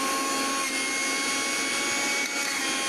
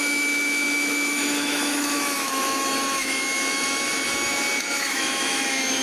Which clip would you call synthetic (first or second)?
second